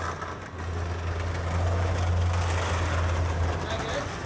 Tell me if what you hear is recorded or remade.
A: recorded